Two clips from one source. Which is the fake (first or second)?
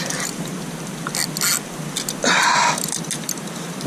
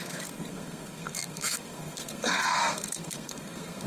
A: second